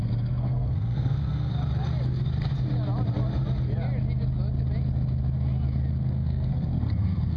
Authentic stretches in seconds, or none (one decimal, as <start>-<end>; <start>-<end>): 1.5-5.9